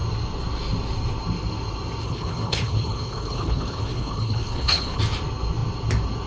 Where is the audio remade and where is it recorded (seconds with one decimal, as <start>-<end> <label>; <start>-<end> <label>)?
0.0-2.0 recorded; 2.0-5.0 remade; 5.0-6.3 recorded